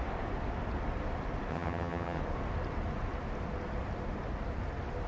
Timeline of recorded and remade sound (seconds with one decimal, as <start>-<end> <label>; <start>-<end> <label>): 0.0-1.5 recorded; 1.5-2.2 remade; 2.2-5.1 recorded